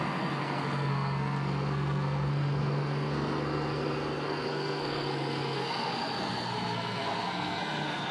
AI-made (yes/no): yes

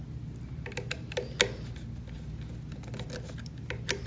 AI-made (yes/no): no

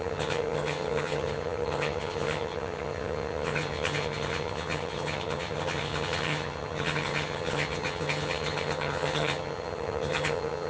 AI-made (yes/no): yes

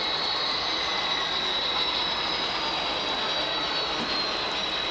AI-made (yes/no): no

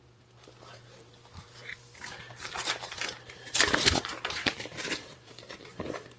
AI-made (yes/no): yes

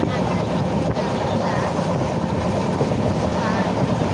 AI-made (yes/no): no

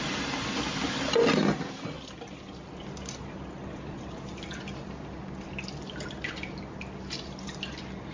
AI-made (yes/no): no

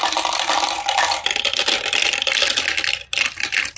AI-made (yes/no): no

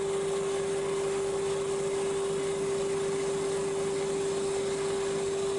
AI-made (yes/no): no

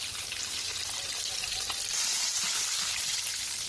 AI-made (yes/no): no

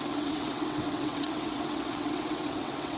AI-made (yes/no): yes